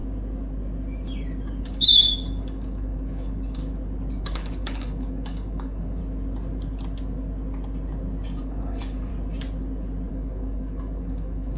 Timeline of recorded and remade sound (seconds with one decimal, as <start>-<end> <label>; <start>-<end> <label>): 0.0-1.6 recorded; 1.6-3.6 remade; 3.6-4.2 recorded; 4.2-6.0 remade; 6.0-8.4 recorded; 8.4-9.1 remade; 9.1-10.1 recorded; 10.1-11.6 remade